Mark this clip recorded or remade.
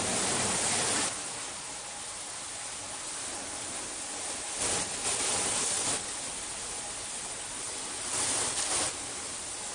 recorded